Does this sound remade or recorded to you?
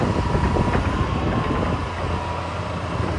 recorded